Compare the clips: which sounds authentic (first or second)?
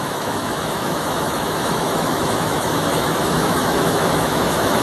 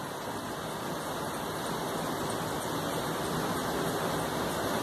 second